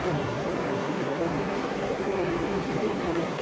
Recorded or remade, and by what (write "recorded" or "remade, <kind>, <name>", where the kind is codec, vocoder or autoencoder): remade, codec, SNAC